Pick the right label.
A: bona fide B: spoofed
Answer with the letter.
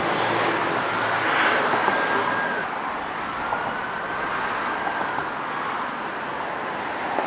A